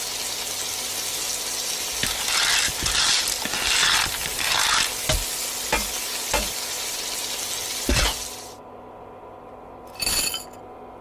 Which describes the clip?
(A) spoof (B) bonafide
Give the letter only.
B